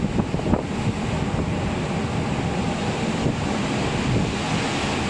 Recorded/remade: recorded